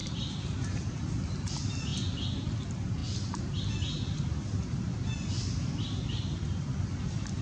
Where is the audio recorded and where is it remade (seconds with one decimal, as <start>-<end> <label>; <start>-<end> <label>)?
0.0-1.9 remade; 1.9-2.4 recorded; 2.4-3.0 remade; 3.0-4.4 recorded; 4.4-7.4 remade